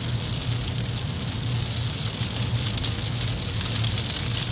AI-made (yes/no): no